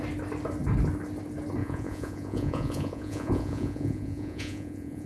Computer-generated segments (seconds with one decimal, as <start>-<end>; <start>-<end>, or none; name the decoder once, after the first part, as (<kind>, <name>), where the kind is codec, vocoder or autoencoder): 1.6-5.1 (vocoder, Vocos)